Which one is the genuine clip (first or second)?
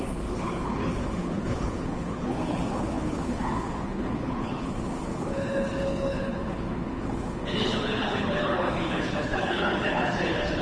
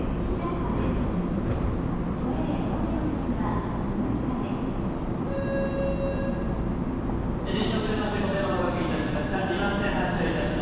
second